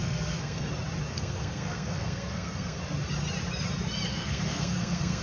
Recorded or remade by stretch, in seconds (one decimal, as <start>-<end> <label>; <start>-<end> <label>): 0.0-0.7 remade; 0.7-1.1 recorded; 1.1-2.8 remade; 2.8-4.1 recorded; 4.1-5.2 remade